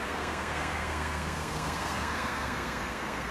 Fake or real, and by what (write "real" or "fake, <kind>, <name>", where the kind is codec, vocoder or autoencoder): fake, codec, SNAC